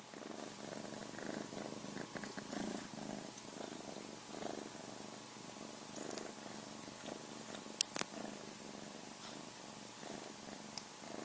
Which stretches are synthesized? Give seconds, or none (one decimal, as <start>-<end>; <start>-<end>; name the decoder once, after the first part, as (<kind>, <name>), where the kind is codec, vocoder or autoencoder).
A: none